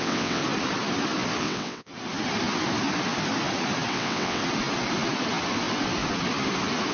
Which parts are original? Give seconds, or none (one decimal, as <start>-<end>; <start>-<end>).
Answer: 0.4-1.4; 1.9-3.9; 4.4-6.9